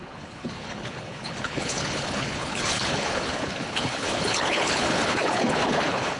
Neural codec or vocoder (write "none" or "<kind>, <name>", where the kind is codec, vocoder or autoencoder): codec, HILCodec